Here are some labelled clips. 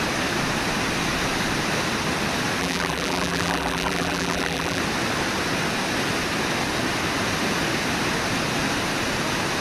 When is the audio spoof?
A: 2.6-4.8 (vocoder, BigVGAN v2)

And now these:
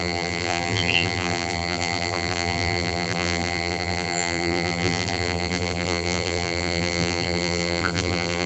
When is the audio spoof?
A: 0.0-8.5 (vocoder, BigVGAN v2)

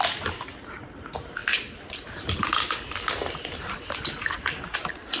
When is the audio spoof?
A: none

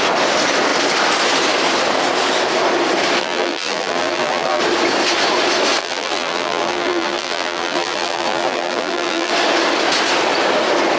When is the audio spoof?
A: 3.2-4.6 (vocoder, BigVGAN v2); 5.8-9.3

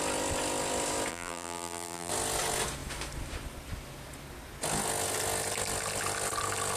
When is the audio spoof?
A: 1.1-2.1 (vocoder, BigVGAN v2)

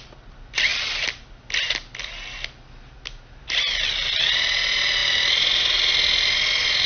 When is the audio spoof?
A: 5.0-5.9 (vocoder, BigVGAN v2)

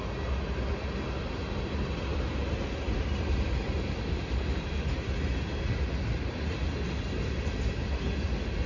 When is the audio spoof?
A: none

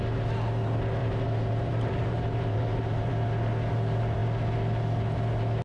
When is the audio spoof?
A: 1.0-3.1 (vocoder, BigVGAN v2)